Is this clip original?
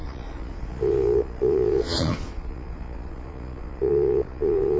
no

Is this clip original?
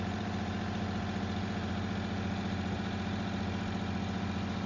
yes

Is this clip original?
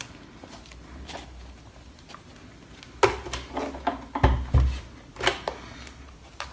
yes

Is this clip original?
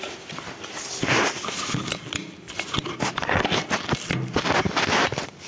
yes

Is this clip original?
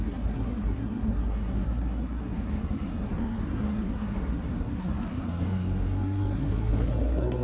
no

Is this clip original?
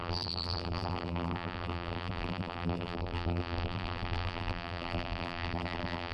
no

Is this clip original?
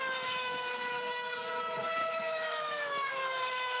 no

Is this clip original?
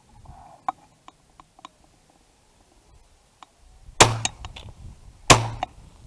yes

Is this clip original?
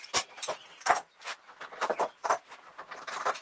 yes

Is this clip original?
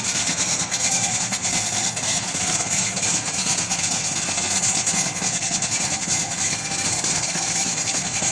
no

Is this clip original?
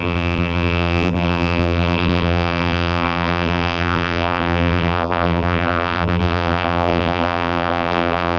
no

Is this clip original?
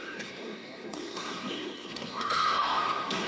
no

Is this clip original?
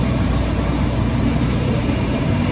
no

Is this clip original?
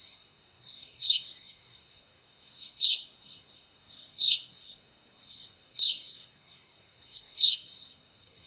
no